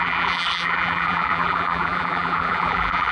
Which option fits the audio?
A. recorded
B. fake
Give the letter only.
B